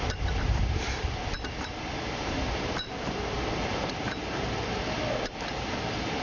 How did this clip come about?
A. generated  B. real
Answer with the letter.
A